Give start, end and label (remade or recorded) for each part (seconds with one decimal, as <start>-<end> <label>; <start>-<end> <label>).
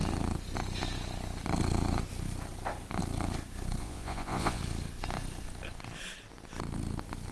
0.0-3.8 recorded; 3.8-4.6 remade; 4.6-7.3 recorded